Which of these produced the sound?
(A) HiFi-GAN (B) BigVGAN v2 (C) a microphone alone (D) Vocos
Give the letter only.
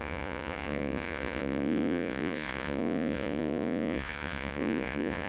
D